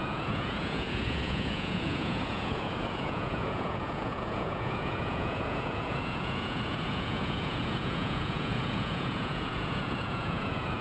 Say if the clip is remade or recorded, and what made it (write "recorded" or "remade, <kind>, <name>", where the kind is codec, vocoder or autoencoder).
remade, vocoder, Vocos